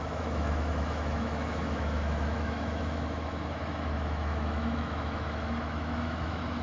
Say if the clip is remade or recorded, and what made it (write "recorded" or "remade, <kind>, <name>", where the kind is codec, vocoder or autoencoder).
remade, autoencoder, DAC-VAE